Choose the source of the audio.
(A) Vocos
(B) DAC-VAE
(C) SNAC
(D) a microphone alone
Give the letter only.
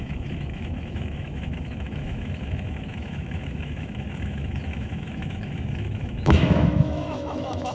B